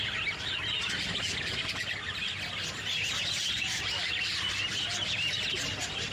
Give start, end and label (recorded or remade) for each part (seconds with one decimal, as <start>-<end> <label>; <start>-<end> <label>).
0.0-6.1 recorded